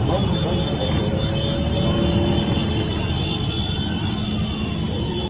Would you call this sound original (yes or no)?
yes